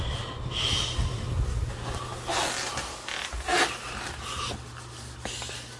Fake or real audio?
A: real